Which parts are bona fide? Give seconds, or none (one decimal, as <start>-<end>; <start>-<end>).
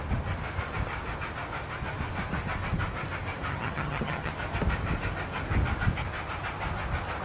0.0-3.5; 4.3-7.2